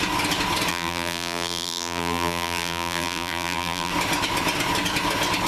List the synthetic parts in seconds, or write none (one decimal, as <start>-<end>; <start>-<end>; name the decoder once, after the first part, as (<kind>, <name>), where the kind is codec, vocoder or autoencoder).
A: 0.7-3.9 (vocoder, BigVGAN v2)